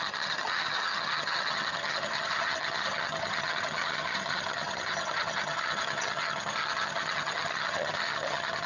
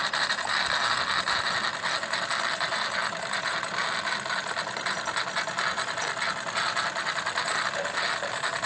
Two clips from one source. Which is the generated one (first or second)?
first